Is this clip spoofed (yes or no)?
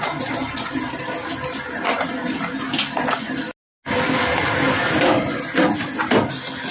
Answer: no